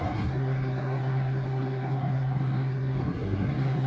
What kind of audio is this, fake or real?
fake